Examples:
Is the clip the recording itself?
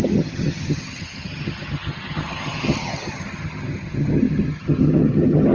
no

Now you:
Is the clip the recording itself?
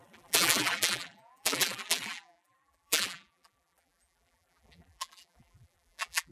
no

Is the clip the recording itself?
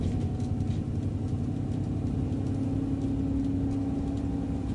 yes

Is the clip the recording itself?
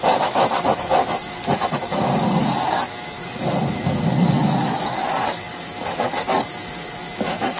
no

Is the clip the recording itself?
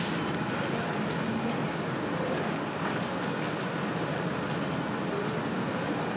yes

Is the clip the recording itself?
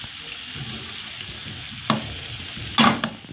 yes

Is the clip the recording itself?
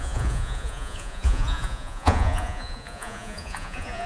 no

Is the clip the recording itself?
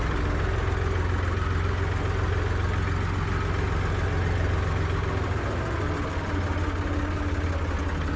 yes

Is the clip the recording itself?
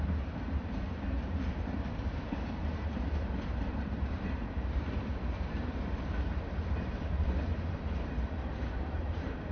no